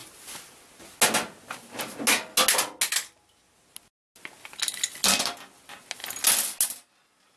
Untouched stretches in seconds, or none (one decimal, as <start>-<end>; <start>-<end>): 0.0-7.4